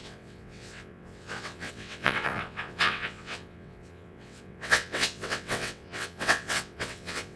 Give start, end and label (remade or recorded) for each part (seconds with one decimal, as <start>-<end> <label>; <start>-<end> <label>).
0.0-7.4 remade